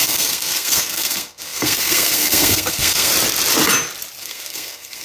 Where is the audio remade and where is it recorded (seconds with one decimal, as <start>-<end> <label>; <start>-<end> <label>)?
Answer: 0.0-3.1 remade; 3.1-4.2 recorded; 4.2-5.0 remade